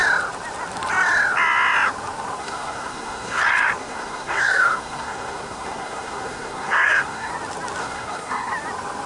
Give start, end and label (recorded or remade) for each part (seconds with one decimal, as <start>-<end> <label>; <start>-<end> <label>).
0.0-2.4 recorded; 2.4-3.4 remade; 3.4-3.8 recorded; 3.8-7.3 remade; 7.3-7.8 recorded; 7.8-8.5 remade; 8.5-9.1 recorded